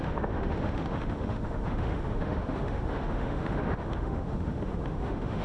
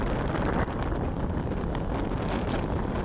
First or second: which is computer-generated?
first